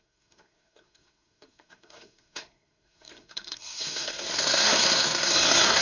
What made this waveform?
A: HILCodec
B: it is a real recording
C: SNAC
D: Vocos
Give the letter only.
C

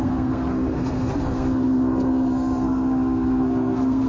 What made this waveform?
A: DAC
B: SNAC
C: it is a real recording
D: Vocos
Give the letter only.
B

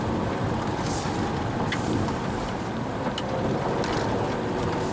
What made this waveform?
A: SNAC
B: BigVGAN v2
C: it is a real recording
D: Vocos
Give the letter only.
C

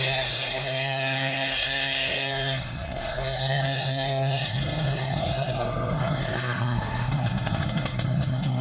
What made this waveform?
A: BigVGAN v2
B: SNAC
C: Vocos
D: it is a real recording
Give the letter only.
B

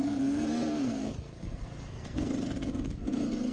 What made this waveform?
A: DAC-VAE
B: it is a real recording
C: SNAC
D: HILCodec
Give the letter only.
C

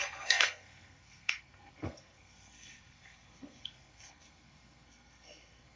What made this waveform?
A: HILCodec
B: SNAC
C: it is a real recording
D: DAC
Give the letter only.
B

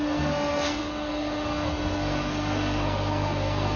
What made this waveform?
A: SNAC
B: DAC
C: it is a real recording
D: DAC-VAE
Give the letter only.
A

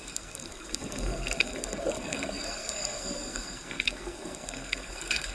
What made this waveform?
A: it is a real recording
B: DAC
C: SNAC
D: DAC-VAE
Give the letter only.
C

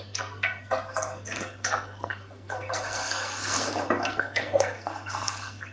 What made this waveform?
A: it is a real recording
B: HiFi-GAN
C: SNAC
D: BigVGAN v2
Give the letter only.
C